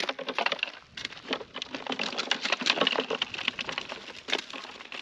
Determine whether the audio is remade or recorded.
recorded